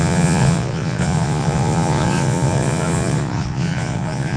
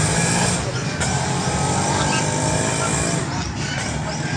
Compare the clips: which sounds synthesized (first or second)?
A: first